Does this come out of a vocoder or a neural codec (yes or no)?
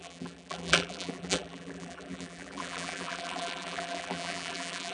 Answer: yes